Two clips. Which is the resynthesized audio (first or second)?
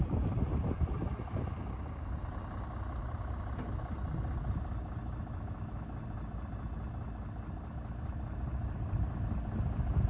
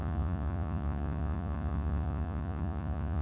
second